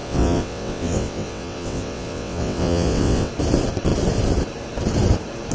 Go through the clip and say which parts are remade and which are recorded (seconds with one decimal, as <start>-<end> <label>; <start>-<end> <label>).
0.0-3.3 remade; 3.3-5.5 recorded